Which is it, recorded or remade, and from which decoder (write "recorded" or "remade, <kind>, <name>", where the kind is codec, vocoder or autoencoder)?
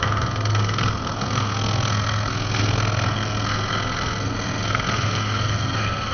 remade, codec, SNAC